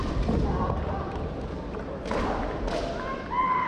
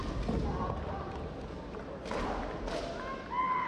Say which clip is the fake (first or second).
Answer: first